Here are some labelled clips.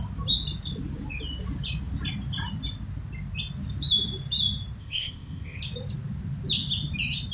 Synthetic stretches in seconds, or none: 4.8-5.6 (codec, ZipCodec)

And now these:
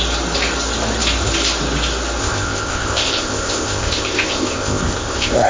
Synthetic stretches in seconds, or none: 2.2-5.5 (codec, ZipCodec)